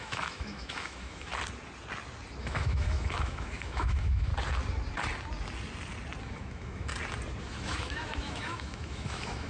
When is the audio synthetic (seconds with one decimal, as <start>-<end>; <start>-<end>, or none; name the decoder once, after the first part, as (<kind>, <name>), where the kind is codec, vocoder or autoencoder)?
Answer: 0.0-1.3 (autoencoder, DAC-VAE); 2.4-4.3; 6.2-6.9; 7.4-9.5